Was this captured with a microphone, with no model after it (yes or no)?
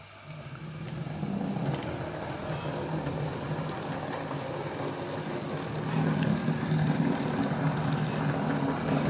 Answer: yes